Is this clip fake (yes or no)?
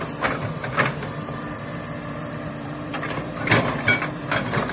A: yes